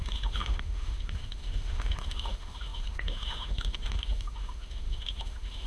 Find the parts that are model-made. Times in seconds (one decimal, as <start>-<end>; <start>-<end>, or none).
0.0-5.7